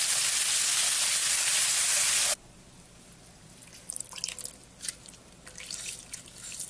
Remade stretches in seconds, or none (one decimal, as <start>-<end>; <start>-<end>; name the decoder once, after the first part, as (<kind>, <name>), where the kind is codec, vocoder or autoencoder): 1.5-4.2 (vocoder, BigVGAN v2)